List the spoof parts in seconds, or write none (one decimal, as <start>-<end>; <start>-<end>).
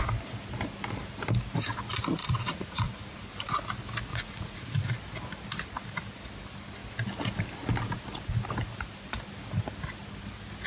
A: 2.2-3.2; 4.1-4.9